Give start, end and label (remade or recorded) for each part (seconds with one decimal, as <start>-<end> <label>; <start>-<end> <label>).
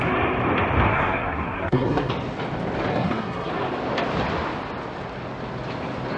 0.0-0.9 recorded; 0.9-2.1 remade; 2.1-2.9 recorded; 2.9-3.5 remade; 3.5-6.2 recorded